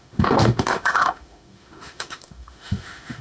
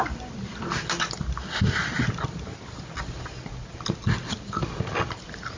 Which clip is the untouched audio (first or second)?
second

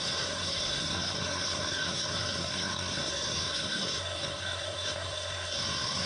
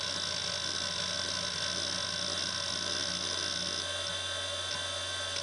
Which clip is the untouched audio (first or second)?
second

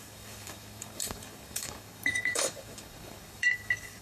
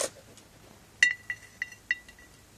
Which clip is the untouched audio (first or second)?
second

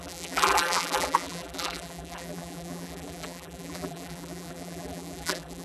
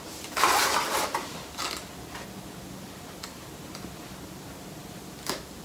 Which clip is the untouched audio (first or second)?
second